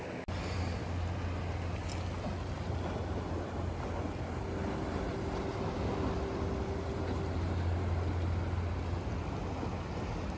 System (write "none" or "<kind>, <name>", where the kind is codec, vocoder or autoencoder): none